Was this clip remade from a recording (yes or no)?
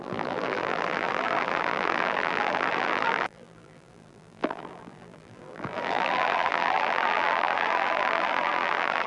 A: yes